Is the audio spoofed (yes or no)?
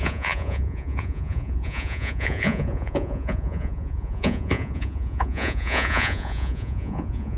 yes